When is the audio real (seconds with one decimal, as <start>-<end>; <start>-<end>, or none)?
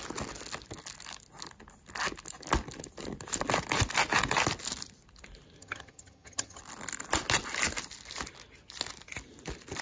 0.0-5.6; 6.6-9.8